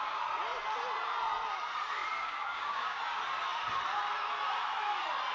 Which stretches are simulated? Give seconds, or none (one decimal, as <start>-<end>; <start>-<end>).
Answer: 2.2-3.0

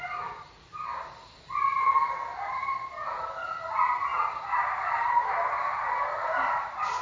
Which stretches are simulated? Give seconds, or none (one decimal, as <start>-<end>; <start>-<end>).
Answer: none

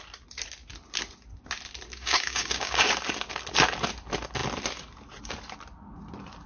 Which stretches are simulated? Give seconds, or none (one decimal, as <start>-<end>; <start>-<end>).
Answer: 1.9-2.8

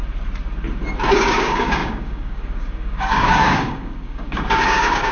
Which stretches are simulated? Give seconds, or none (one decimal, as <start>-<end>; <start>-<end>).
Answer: 1.1-5.1

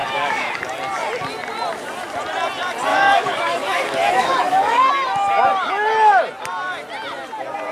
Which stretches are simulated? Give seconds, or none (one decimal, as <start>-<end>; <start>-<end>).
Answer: 0.0-0.6; 2.9-4.9

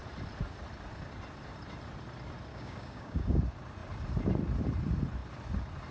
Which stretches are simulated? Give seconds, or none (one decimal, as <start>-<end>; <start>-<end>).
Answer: 2.5-3.4

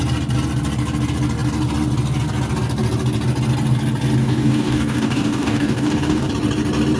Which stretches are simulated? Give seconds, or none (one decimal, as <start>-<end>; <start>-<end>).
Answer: 4.2-6.3